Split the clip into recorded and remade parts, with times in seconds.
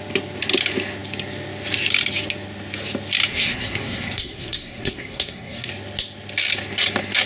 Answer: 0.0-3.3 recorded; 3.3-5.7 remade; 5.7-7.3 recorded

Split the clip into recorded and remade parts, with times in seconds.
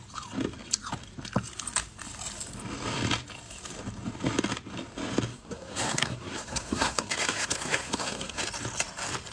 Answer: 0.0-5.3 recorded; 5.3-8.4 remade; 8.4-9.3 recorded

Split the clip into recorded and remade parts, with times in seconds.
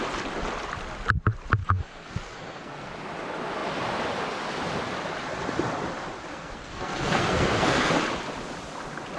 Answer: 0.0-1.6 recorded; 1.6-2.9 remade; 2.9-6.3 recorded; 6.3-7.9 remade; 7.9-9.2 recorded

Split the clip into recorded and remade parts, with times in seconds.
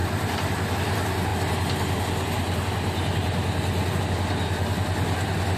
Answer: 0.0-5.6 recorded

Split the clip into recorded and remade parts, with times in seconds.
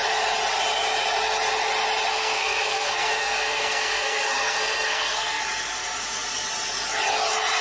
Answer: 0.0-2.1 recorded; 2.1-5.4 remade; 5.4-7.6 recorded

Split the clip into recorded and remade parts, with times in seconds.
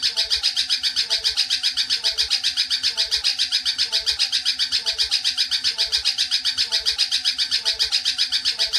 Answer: 0.0-8.8 recorded